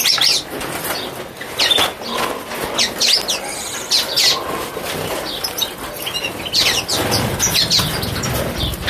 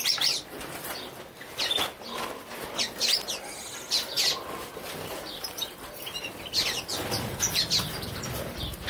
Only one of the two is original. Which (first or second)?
first